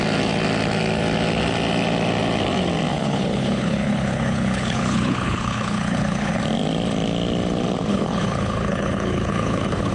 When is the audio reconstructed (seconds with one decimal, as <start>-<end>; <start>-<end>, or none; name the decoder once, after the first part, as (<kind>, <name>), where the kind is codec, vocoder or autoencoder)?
2.9-6.4 (codec, HILCodec); 7.9-9.9